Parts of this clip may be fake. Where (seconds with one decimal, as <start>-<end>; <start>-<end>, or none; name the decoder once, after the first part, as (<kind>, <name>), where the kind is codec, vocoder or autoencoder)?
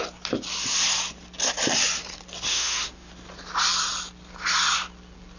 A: 2.5-3.1 (autoencoder, DAC-VAE)